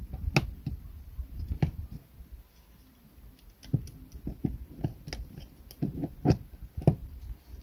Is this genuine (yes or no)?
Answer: yes